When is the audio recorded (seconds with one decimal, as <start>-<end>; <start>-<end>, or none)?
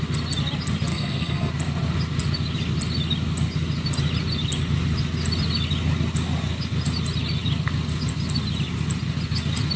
0.0-0.9; 1.5-9.8